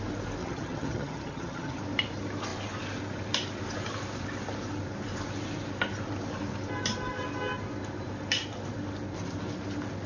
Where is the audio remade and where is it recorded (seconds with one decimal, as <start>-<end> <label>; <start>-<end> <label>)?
0.0-0.4 recorded; 0.4-1.8 remade; 1.8-10.1 recorded